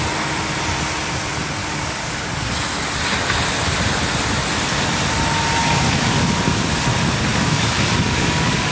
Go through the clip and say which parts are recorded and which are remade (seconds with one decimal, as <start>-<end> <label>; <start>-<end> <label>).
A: 0.0-1.6 recorded; 1.6-2.5 remade; 2.5-5.6 recorded; 5.6-6.8 remade; 6.8-7.3 recorded; 7.3-8.7 remade